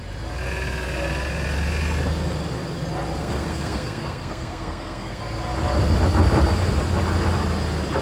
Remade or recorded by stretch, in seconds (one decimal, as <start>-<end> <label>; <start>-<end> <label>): 0.0-3.2 recorded; 3.2-5.2 remade; 5.2-8.0 recorded